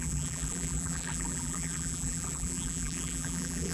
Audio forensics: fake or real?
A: fake